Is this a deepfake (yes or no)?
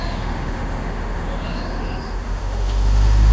yes